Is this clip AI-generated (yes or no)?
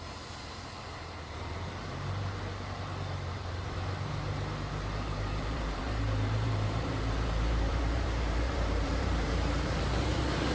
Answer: yes